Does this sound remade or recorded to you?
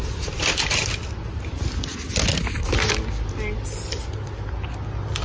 recorded